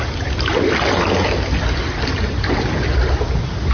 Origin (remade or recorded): recorded